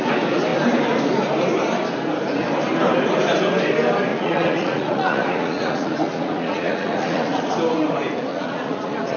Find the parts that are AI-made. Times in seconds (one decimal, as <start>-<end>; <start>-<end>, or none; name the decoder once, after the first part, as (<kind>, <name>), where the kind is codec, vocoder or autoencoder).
4.1-7.5 (vocoder, Vocos); 8.3-9.2